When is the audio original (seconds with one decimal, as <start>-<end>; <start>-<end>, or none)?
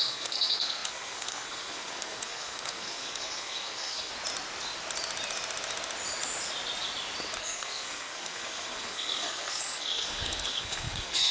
4.1-7.4